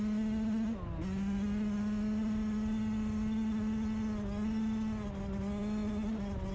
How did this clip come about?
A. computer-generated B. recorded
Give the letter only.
B